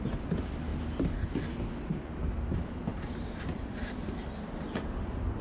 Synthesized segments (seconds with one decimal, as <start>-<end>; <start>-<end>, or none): none